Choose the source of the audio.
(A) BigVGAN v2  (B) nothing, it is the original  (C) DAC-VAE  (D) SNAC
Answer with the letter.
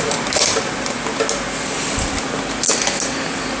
B